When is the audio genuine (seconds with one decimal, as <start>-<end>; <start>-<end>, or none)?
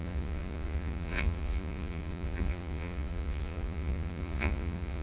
none